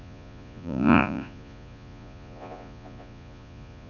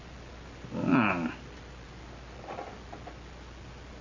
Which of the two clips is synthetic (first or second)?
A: first